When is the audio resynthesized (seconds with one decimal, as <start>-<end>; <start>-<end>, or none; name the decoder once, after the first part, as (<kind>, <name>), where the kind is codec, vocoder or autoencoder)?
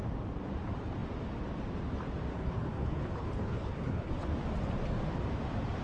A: 2.3-4.1 (codec, HILCodec)